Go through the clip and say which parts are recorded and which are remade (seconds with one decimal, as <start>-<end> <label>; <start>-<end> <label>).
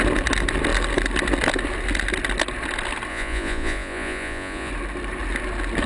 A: 0.0-3.1 recorded; 3.1-4.7 remade; 4.7-5.9 recorded